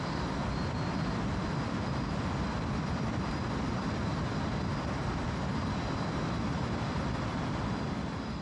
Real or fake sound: real